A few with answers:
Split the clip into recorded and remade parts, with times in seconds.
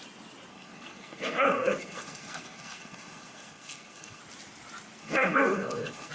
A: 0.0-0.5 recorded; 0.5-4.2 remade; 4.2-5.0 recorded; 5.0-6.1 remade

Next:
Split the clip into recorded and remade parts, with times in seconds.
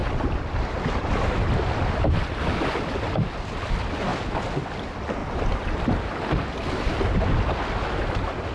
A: 0.0-2.9 remade; 2.9-5.2 recorded; 5.2-6.0 remade; 6.0-8.5 recorded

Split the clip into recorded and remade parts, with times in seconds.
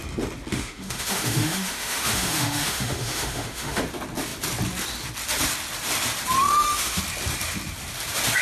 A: 0.0-0.5 recorded; 0.5-3.8 remade; 3.8-6.4 recorded; 6.4-7.0 remade; 7.0-8.4 recorded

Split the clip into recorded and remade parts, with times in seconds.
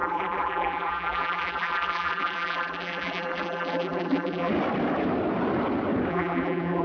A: 0.0-4.5 remade; 4.5-6.1 recorded; 6.1-6.8 remade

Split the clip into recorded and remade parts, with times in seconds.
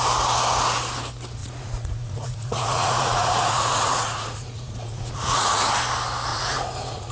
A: 0.0-1.4 recorded; 1.4-5.7 remade; 5.7-6.3 recorded; 6.3-7.1 remade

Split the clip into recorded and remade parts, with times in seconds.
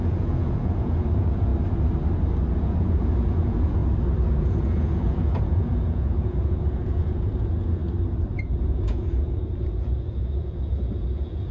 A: 0.0-1.5 remade; 1.5-2.6 recorded; 2.6-3.8 remade; 3.8-4.4 recorded; 4.4-7.8 remade; 7.8-8.4 recorded; 8.4-11.5 remade